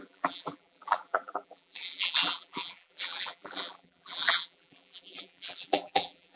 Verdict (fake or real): fake